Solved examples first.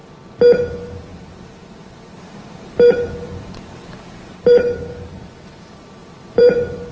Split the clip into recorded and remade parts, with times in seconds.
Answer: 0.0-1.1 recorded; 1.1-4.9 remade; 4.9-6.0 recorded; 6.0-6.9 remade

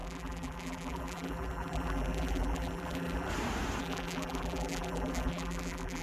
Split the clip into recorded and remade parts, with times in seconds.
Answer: 0.0-3.3 remade; 3.3-3.8 recorded; 3.8-6.0 remade